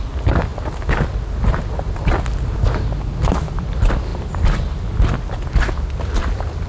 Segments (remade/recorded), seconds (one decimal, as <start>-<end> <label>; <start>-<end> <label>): 0.0-6.7 recorded